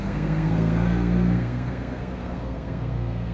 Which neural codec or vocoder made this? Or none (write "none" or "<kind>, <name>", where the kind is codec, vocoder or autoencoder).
codec, SNAC